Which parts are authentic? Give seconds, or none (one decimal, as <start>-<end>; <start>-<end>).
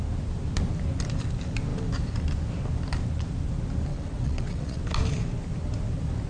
0.0-3.9; 4.8-6.3